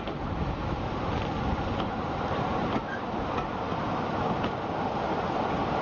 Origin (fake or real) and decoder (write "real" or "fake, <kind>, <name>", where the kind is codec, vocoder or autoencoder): real